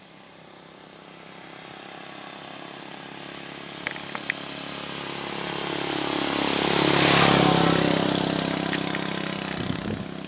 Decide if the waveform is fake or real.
real